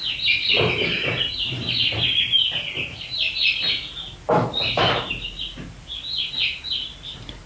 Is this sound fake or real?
real